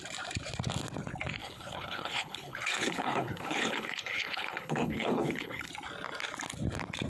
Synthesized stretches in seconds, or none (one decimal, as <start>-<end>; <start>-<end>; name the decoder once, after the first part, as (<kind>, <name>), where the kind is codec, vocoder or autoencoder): 1.4-5.7 (codec, HILCodec)